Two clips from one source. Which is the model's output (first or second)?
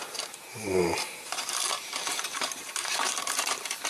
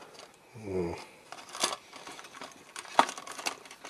first